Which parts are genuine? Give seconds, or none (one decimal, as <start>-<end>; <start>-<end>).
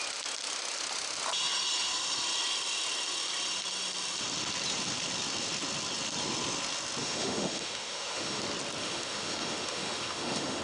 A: 0.0-7.0; 8.4-8.8